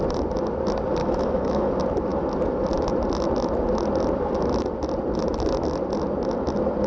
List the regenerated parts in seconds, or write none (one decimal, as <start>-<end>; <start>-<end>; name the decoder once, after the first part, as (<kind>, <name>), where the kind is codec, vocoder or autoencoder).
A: 1.0-1.7 (autoencoder, DAC-VAE)